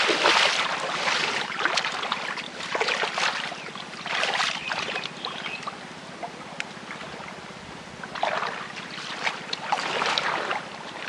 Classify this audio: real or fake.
fake